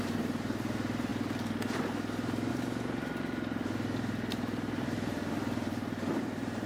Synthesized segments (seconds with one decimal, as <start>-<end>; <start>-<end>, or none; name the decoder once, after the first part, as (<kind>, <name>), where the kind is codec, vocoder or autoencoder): 0.0-1.1 (vocoder, BigVGAN v2); 2.5-6.7